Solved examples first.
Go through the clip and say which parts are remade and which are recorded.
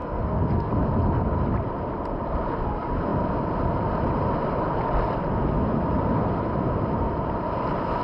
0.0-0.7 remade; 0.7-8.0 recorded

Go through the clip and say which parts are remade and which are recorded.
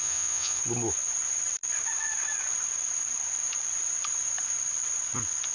0.0-0.6 remade; 0.6-5.5 recorded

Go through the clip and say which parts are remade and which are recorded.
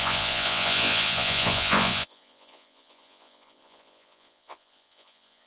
0.0-5.5 remade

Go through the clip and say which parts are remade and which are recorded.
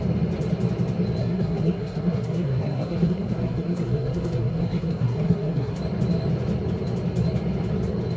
0.0-1.2 recorded; 1.2-5.8 remade; 5.8-8.2 recorded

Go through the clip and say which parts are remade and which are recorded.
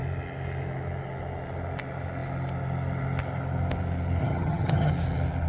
0.0-4.2 recorded; 4.2-4.9 remade; 4.9-5.5 recorded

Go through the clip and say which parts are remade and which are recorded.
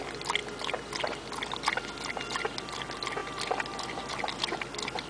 0.0-5.1 recorded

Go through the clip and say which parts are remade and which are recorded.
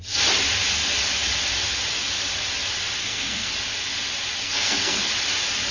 0.0-3.0 recorded; 3.0-3.5 remade; 3.5-4.4 recorded; 4.4-5.0 remade; 5.0-5.7 recorded